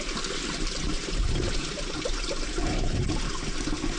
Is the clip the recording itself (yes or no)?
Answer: yes